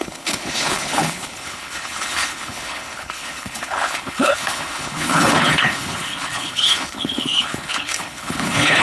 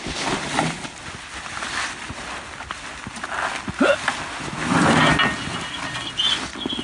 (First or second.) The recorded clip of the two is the second